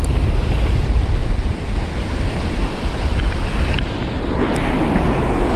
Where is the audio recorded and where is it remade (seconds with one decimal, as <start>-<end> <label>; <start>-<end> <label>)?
0.0-0.4 recorded; 0.4-3.2 remade; 3.2-5.6 recorded